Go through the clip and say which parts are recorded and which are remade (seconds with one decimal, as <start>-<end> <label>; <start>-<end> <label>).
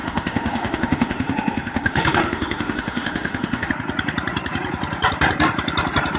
0.0-3.7 remade; 3.7-6.2 recorded